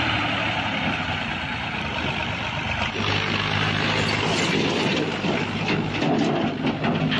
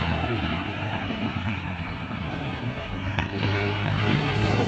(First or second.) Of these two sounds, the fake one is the second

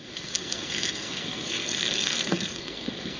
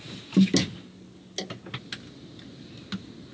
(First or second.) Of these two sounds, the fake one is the first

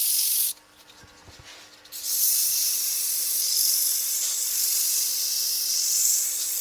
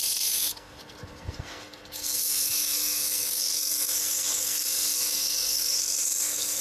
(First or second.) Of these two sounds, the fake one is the second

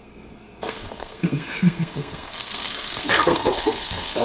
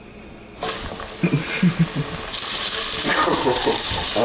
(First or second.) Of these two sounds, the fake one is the first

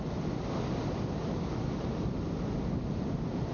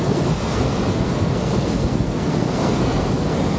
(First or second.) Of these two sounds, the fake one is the second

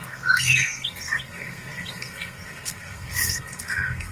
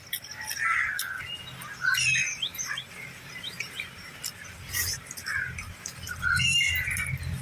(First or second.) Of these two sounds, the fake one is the first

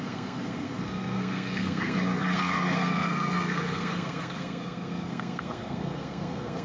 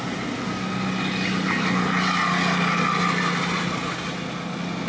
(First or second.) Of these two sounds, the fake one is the first